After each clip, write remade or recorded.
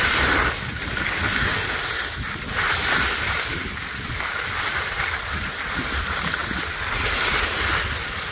recorded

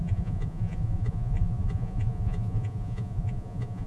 remade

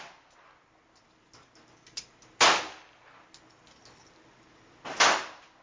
recorded